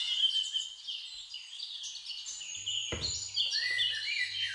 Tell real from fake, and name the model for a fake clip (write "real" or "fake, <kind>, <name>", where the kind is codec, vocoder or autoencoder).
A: real